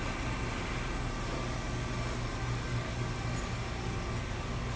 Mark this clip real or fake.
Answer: real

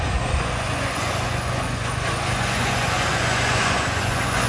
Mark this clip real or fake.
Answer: fake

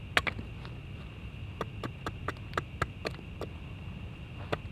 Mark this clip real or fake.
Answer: real